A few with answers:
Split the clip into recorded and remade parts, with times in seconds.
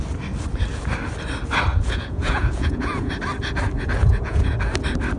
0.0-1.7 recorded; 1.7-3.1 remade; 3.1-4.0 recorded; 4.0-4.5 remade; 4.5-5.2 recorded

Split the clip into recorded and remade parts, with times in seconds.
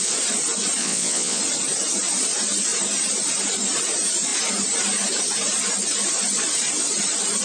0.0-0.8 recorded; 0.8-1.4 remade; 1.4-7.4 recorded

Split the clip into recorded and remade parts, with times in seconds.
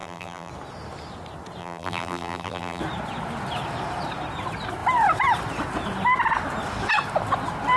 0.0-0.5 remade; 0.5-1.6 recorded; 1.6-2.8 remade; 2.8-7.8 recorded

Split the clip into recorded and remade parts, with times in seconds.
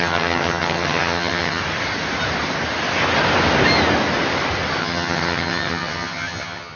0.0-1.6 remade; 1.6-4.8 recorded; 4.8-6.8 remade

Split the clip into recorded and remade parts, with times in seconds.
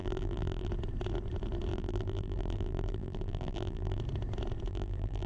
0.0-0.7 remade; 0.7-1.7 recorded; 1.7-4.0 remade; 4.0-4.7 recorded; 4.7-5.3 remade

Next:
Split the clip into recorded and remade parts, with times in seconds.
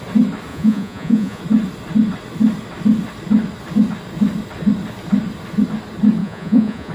0.0-0.5 recorded; 0.5-1.4 remade; 1.4-6.2 recorded; 6.2-6.9 remade